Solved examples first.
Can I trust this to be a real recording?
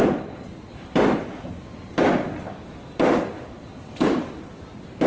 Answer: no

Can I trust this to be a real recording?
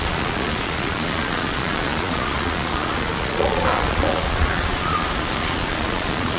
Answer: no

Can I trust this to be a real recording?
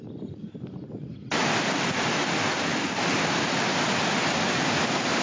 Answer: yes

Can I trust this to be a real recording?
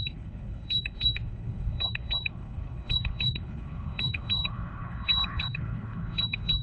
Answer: no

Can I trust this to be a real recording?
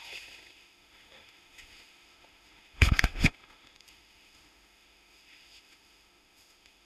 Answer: no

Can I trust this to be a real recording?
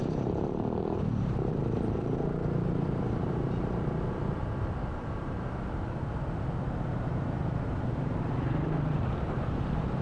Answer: no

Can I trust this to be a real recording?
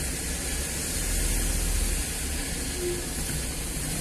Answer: yes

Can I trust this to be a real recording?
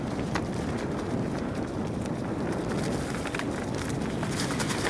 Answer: yes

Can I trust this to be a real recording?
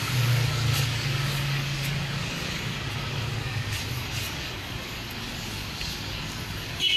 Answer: no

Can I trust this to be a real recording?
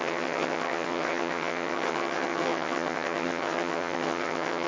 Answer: no